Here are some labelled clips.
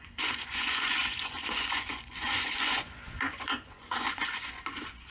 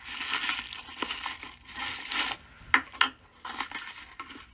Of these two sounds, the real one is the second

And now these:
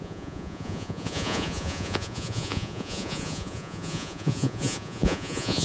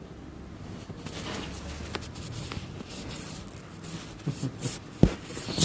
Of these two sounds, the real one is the second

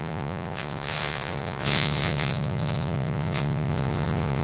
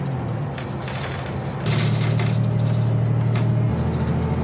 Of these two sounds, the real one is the second